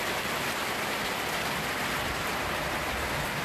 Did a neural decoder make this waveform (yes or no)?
no